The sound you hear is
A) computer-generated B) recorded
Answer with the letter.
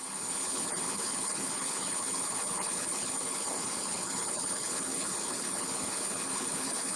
A